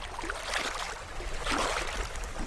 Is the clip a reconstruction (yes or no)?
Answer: no